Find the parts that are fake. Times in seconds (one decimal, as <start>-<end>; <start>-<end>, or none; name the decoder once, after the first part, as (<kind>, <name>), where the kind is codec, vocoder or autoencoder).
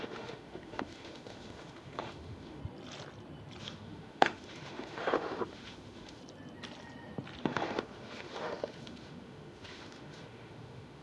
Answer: 0.0-2.6 (autoencoder, DAC-VAE); 3.6-6.2; 7.4-11.0